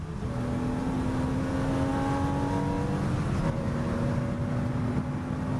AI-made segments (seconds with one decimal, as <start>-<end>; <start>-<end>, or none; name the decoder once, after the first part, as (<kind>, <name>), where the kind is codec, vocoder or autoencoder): 0.8-1.5 (vocoder, BigVGAN v2)